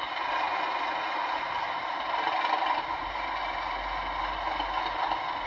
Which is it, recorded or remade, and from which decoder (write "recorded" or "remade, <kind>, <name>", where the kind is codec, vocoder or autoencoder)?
recorded